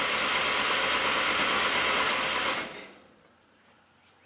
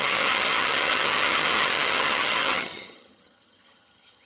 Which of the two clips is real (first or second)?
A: first